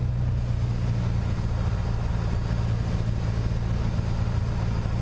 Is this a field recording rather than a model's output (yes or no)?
yes